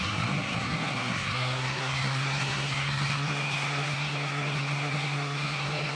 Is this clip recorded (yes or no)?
no